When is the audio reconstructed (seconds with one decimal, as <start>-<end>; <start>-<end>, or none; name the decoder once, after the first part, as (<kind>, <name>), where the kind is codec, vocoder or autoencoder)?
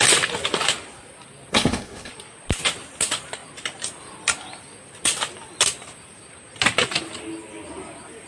1.5-2.1 (codec, SNAC)